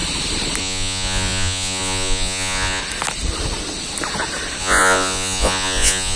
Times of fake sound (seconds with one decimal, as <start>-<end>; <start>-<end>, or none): 0.6-2.8; 4.6-6.2